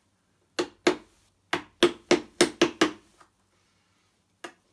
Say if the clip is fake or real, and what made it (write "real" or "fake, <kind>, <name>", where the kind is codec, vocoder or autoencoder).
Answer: real